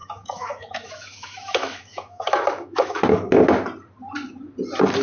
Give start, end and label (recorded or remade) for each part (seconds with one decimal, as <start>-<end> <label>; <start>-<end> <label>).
0.0-3.0 remade; 3.0-5.0 recorded

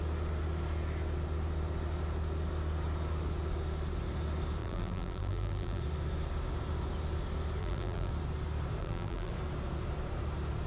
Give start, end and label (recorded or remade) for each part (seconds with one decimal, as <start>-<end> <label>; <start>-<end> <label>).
0.0-4.6 recorded; 4.6-5.8 remade; 5.8-7.6 recorded; 7.6-8.1 remade; 8.1-8.8 recorded; 8.8-9.3 remade; 9.3-10.7 recorded

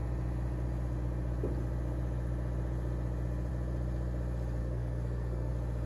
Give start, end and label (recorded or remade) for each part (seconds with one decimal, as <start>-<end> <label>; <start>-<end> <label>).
0.0-4.6 recorded; 4.6-5.5 remade; 5.5-5.9 recorded

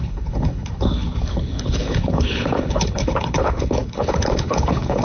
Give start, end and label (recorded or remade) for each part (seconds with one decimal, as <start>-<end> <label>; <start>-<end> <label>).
0.0-5.0 remade

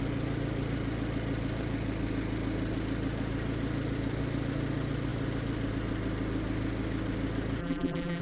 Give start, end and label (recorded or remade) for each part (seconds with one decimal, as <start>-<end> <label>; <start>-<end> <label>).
0.0-7.6 recorded; 7.6-8.2 remade

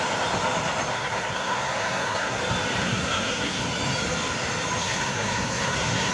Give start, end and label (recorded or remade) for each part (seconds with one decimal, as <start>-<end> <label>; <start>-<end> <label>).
0.0-0.9 recorded; 0.9-2.4 remade; 2.4-2.8 recorded; 2.8-3.6 remade; 3.6-4.8 recorded; 4.8-6.1 remade

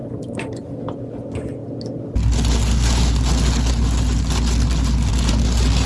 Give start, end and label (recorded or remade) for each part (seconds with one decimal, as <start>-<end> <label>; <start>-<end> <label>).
0.0-0.8 remade; 0.8-5.9 recorded

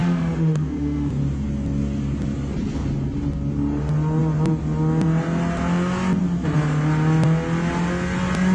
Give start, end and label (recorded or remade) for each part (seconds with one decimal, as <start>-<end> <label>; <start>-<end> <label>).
0.0-1.1 remade; 1.1-8.5 recorded